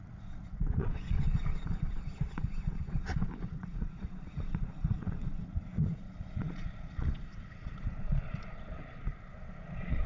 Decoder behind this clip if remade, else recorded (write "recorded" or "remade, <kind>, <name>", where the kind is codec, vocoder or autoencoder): remade, vocoder, Vocos